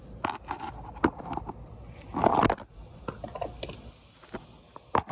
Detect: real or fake real